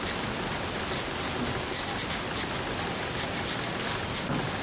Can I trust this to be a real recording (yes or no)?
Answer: yes